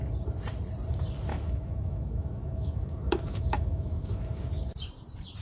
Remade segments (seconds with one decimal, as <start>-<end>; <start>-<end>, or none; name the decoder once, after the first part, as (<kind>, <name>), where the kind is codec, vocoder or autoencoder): 1.3-4.4 (autoencoder, DAC-VAE)